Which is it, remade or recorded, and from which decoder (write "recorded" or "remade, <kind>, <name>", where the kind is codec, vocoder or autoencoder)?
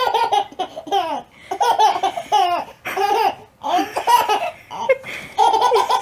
recorded